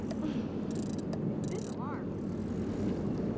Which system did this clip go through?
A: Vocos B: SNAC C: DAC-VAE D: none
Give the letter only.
D